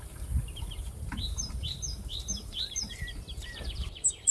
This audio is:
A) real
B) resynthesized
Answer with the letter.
B